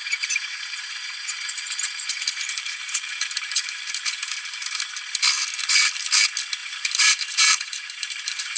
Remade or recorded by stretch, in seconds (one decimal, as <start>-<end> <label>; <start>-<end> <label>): 0.0-4.8 remade; 4.8-6.6 recorded; 6.6-8.6 remade

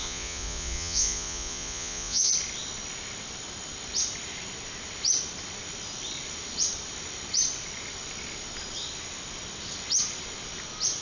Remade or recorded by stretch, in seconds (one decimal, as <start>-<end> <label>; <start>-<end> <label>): 0.0-2.3 remade; 2.3-11.0 recorded

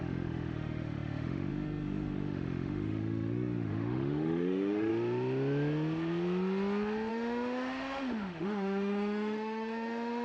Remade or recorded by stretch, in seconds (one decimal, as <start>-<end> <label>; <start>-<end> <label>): 0.0-4.9 remade; 4.9-7.1 recorded; 7.1-10.2 remade

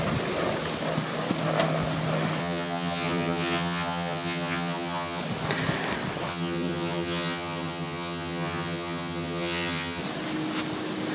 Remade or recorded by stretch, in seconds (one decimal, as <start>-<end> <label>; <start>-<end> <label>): 0.0-2.4 recorded; 2.4-5.2 remade; 5.2-6.3 recorded; 6.3-10.0 remade; 10.0-11.1 recorded